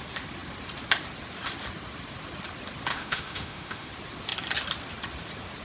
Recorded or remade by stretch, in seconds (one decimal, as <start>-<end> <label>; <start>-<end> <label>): 0.0-2.9 recorded; 2.9-3.9 remade; 3.9-5.6 recorded